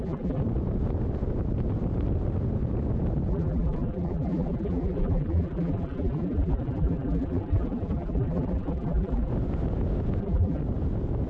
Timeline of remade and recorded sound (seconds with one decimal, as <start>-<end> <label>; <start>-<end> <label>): 0.0-0.4 remade; 0.4-3.3 recorded; 3.3-9.3 remade; 9.3-10.2 recorded; 10.2-10.6 remade; 10.6-11.3 recorded